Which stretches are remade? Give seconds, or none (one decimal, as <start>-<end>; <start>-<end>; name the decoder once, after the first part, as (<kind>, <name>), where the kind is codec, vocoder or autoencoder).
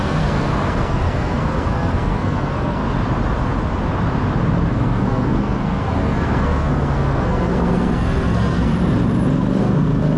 0.0-2.8 (codec, SNAC); 4.7-8.7; 9.6-10.2